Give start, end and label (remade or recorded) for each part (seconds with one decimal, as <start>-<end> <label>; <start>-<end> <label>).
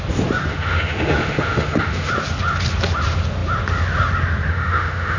0.0-0.5 recorded; 0.5-2.1 remade; 2.1-4.5 recorded; 4.5-5.2 remade